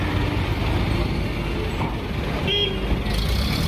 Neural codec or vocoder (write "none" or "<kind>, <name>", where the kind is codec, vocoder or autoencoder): none